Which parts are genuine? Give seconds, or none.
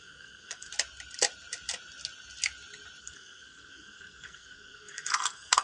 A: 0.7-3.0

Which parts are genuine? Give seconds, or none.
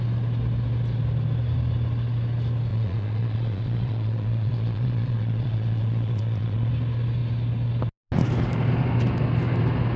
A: 0.0-2.7; 6.7-10.0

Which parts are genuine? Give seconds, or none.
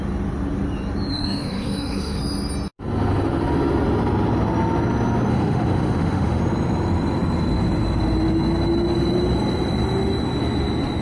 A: 0.0-1.1; 2.2-5.3; 6.4-11.0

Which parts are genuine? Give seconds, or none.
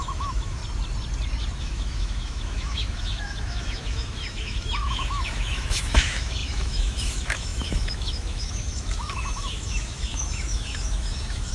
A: 0.6-1.6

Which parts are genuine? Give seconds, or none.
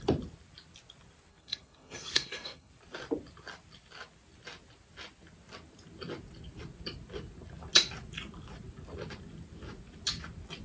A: 0.0-1.3; 2.7-10.6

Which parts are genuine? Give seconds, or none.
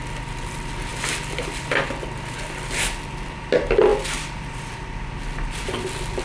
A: 0.0-6.2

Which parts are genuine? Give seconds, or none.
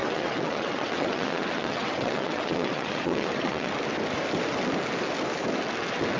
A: 3.7-6.2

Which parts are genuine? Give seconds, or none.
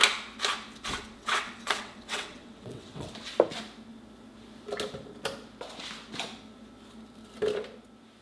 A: 0.0-1.2; 3.1-8.2